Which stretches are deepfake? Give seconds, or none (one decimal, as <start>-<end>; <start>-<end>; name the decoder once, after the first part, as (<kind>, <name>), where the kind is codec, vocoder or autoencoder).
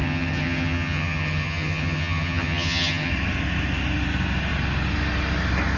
0.0-3.1 (vocoder, HiFi-GAN)